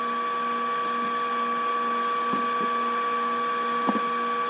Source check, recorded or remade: recorded